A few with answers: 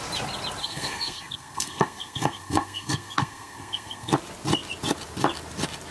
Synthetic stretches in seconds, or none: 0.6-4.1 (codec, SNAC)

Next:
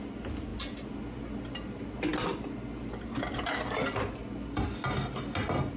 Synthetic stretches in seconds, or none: none

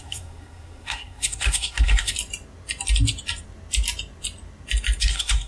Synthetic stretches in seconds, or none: 0.0-2.1 (codec, SNAC); 5.0-5.5

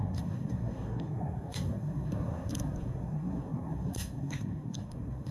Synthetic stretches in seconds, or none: 0.0-5.3 (codec, SNAC)

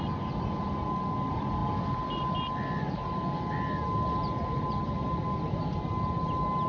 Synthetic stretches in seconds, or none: none

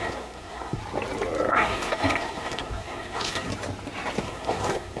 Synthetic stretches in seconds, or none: 0.0-0.8 (codec, SNAC); 1.5-3.5; 4.2-5.0

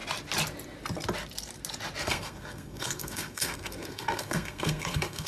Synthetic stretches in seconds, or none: 2.0-5.3 (codec, SNAC)